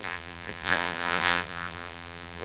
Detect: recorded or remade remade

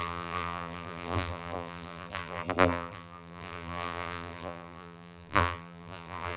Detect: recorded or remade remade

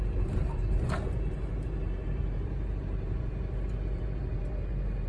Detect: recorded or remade remade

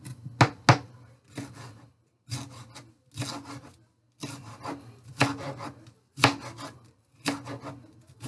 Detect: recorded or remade recorded